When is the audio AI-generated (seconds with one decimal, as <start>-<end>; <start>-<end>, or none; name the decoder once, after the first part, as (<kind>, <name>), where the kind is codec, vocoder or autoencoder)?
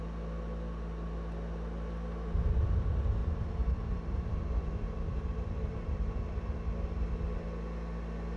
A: 3.2-6.1 (vocoder, BigVGAN v2)